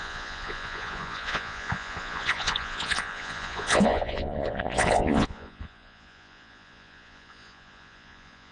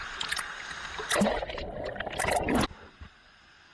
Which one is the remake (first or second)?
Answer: first